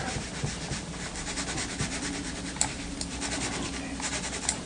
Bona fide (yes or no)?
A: yes